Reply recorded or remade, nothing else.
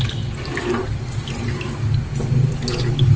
recorded